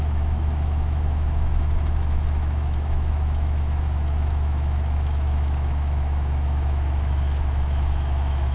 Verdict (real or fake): fake